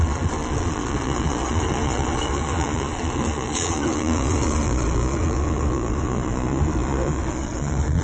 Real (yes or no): no